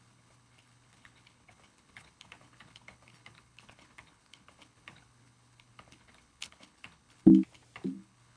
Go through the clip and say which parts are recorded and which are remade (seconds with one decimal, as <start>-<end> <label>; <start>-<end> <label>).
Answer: 0.0-7.3 remade; 7.3-7.9 recorded; 7.9-8.4 remade